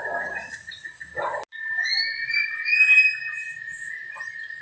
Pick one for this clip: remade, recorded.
recorded